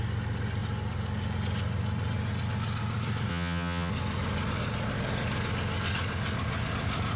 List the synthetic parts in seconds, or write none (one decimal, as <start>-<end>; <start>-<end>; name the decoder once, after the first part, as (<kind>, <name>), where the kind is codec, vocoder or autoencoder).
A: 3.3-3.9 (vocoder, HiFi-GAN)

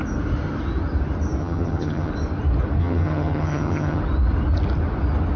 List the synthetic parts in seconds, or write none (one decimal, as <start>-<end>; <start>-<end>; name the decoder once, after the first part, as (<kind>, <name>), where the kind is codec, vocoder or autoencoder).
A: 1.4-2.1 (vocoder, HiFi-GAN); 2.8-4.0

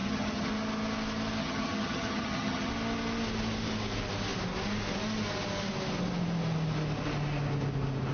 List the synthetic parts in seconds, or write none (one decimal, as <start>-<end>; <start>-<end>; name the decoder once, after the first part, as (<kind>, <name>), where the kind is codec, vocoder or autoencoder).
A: 0.0-0.5 (vocoder, HiFi-GAN); 1.4-2.7

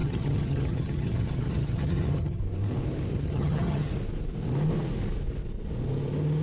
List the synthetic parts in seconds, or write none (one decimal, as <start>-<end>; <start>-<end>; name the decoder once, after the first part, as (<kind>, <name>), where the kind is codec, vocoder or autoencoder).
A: 0.0-2.4 (vocoder, HiFi-GAN); 3.1-3.9

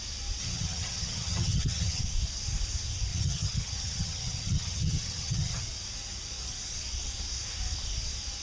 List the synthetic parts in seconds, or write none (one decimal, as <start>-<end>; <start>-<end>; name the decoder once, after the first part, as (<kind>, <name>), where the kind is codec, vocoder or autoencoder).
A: 0.4-2.0 (vocoder, HiFi-GAN); 3.1-5.6

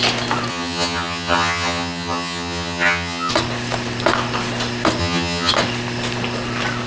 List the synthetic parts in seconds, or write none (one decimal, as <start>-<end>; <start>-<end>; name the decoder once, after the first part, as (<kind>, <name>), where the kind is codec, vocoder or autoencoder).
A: 0.5-3.3 (vocoder, HiFi-GAN); 5.0-5.5